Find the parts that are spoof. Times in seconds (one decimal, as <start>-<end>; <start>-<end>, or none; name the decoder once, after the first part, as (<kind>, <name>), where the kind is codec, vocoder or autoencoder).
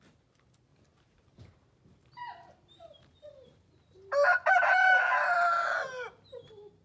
0.7-4.5 (vocoder, BigVGAN v2)